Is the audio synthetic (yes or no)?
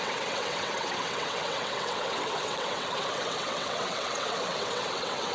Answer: yes